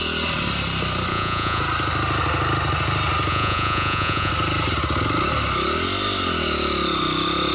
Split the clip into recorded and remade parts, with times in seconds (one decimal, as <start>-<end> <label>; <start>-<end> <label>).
0.0-1.1 recorded; 1.1-1.6 remade; 1.6-3.3 recorded; 3.3-4.3 remade; 4.3-7.5 recorded